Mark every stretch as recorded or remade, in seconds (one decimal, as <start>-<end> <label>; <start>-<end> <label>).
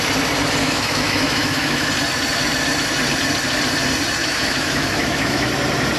0.0-0.6 recorded; 0.6-1.9 remade; 1.9-4.2 recorded; 4.2-5.5 remade; 5.5-6.0 recorded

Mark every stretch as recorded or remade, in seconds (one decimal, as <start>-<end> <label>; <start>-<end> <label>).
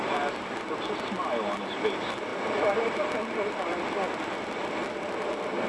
0.0-5.7 recorded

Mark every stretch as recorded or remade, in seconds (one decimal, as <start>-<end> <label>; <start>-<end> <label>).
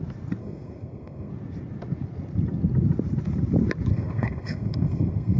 0.0-0.4 recorded; 0.4-1.3 remade; 1.3-3.9 recorded; 3.9-5.4 remade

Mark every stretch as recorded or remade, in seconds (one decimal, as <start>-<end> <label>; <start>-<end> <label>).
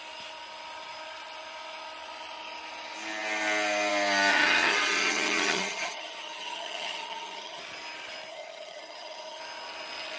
0.0-4.3 recorded; 4.3-7.6 remade; 7.6-8.3 recorded; 8.3-9.4 remade; 9.4-10.2 recorded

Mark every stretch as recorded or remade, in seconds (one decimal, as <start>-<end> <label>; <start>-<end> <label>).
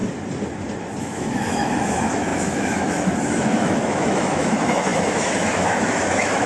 0.0-1.0 recorded; 1.0-6.5 remade